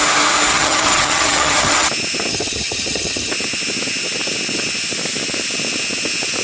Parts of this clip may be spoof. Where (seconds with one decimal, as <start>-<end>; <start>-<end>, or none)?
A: 0.5-1.9; 2.3-3.3